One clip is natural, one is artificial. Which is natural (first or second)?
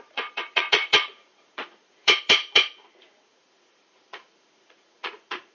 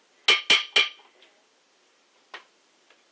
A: second